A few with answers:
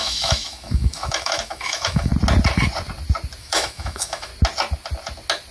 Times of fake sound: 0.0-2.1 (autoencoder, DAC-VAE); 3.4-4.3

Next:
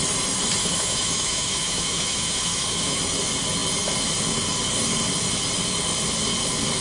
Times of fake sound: 0.6-3.0 (autoencoder, DAC-VAE)